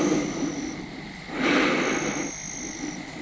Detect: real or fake real